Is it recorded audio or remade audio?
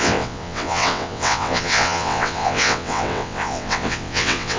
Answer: remade